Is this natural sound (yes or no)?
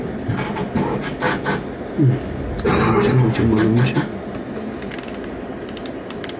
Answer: yes